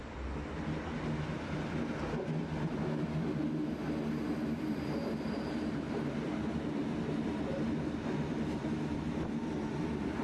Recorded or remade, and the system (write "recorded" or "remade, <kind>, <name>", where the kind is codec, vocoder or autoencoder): recorded